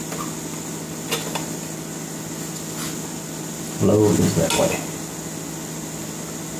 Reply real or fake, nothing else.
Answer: real